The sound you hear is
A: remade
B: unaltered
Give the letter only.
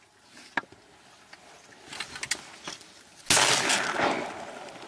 B